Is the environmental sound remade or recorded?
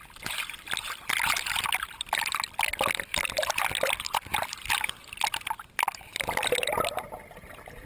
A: remade